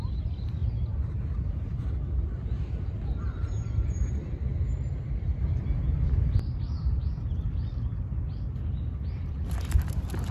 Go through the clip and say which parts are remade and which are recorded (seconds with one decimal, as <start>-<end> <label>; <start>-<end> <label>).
0.0-10.3 recorded